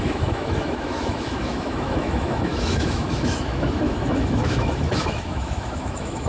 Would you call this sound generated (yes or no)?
yes